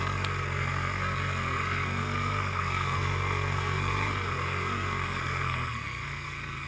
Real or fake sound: fake